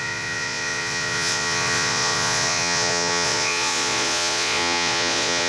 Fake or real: fake